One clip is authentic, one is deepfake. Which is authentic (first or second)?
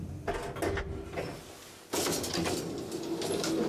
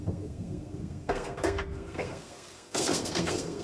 first